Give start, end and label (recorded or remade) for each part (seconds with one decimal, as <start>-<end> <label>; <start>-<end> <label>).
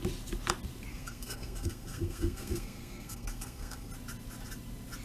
0.0-0.9 recorded; 0.9-3.9 remade; 3.9-5.0 recorded